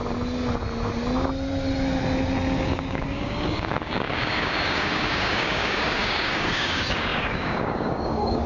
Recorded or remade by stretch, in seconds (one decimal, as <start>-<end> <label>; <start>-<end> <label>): 0.0-2.6 recorded; 2.6-8.5 remade